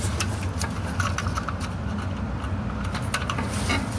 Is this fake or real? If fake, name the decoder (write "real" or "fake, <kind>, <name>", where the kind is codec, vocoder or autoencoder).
real